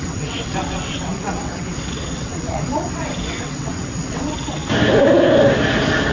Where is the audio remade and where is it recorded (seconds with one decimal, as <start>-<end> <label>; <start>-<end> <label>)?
0.0-4.6 remade; 4.6-6.1 recorded